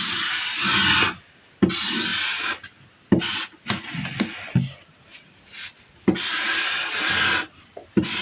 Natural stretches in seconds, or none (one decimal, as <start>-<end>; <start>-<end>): 0.0-8.2